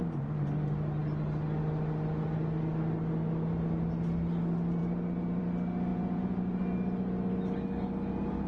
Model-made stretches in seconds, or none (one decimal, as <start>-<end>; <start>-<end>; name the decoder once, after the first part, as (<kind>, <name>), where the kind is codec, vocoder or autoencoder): 5.9-6.4 (vocoder, Vocos)